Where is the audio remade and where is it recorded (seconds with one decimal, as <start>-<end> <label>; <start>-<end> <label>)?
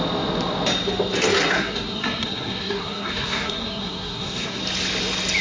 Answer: 0.0-1.4 recorded; 1.4-4.6 remade; 4.6-5.4 recorded